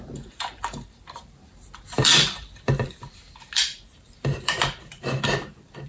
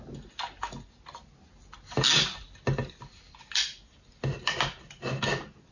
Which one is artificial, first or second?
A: first